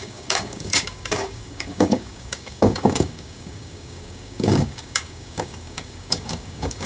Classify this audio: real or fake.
fake